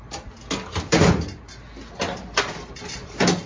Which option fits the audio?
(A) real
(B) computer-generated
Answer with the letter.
A